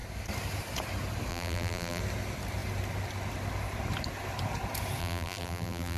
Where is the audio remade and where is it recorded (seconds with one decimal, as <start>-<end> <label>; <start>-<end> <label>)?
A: 0.0-1.3 recorded; 1.3-2.0 remade; 2.0-5.0 recorded; 5.0-6.0 remade